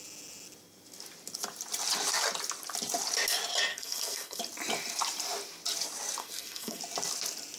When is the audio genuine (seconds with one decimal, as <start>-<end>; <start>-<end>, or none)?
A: 0.0-3.7; 4.4-6.2; 6.8-7.6